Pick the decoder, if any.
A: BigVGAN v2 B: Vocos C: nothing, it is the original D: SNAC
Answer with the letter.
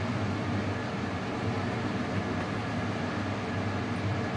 C